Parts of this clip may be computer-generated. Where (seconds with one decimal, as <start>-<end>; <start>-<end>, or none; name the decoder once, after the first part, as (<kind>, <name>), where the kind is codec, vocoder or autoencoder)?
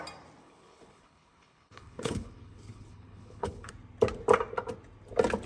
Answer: 0.4-3.7 (codec, HILCodec)